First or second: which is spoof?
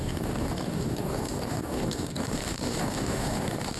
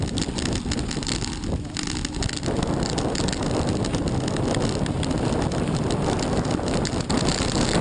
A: first